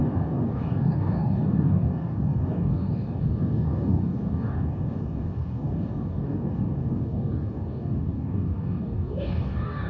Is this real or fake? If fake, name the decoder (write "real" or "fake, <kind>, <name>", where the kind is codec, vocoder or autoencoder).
fake, codec, DAC